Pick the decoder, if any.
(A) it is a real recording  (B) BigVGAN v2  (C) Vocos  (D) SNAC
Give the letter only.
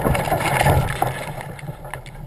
A